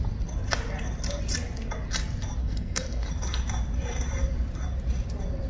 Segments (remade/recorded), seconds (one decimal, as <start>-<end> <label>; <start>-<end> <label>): 0.0-2.4 recorded; 2.4-3.1 remade; 3.1-5.5 recorded